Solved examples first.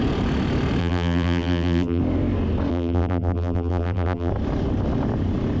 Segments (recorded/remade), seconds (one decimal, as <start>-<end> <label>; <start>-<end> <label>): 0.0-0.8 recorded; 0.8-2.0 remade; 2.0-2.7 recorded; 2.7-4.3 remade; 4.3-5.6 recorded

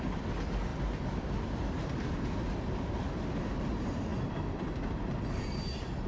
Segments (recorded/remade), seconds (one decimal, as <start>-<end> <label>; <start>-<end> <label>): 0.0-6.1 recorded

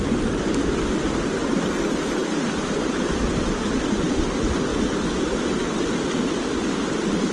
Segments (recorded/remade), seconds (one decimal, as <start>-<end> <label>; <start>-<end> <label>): 0.0-7.3 recorded

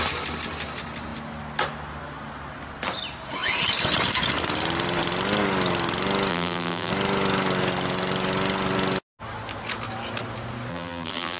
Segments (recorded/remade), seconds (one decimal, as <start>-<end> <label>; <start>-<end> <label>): 0.0-6.3 recorded; 6.3-6.9 remade; 6.9-10.7 recorded; 10.7-11.4 remade